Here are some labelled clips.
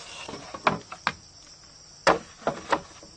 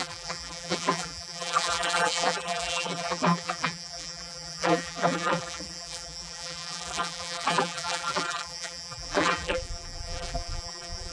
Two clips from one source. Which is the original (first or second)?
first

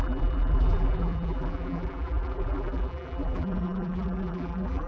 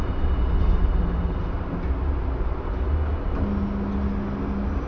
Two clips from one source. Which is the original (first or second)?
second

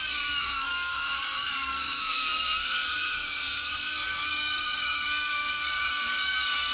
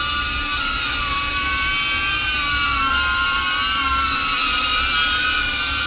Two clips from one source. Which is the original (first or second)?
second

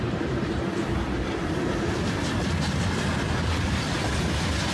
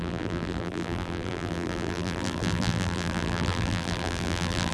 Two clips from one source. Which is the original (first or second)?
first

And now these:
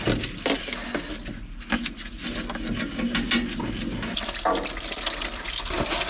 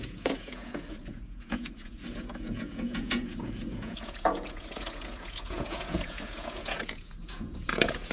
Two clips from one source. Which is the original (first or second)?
first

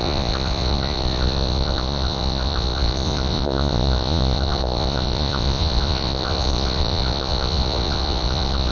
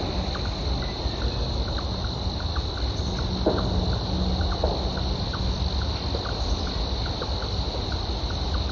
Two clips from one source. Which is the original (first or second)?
second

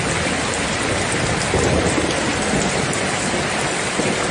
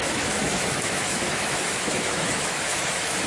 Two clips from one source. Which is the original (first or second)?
first